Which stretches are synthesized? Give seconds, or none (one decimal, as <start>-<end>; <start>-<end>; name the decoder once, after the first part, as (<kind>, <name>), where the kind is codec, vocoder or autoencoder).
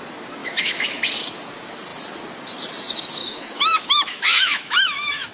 0.4-1.0 (autoencoder, DAC-VAE); 3.2-5.3